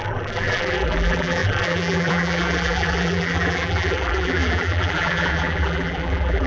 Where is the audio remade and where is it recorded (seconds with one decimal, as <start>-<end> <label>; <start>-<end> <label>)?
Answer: 0.0-6.5 remade